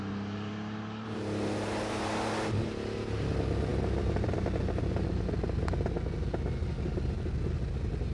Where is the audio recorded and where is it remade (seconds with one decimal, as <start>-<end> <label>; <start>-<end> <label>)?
0.0-8.1 recorded